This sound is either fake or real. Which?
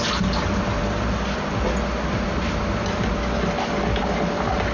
real